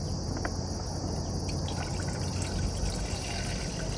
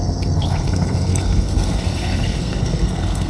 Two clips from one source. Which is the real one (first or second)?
first